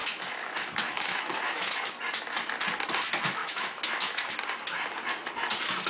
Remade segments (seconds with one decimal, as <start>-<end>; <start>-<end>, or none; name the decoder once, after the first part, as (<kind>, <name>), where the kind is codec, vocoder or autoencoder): 0.0-1.9 (autoencoder, DAC-VAE); 3.4-4.2